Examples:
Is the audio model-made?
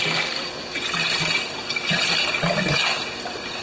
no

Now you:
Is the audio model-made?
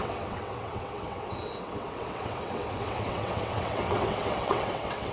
yes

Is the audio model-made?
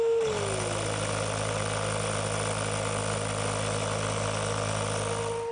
no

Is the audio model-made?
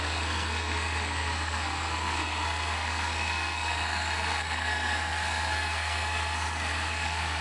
yes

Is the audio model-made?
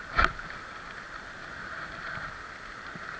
no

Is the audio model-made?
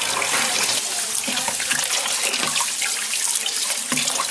no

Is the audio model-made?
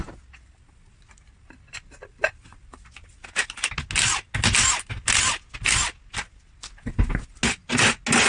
no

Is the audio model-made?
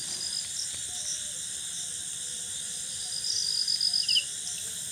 no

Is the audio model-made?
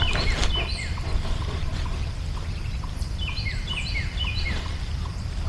yes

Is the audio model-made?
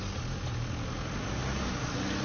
no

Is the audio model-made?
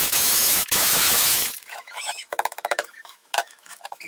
yes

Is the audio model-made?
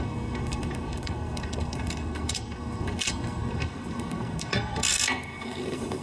yes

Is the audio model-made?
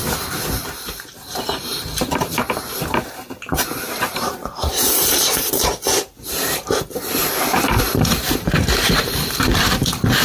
yes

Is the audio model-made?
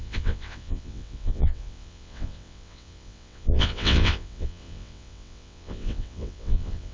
yes